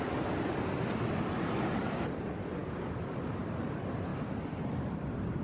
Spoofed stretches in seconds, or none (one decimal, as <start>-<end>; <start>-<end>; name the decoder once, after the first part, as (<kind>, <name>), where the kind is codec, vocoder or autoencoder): 0.0-4.1 (vocoder, BigVGAN v2); 4.8-5.4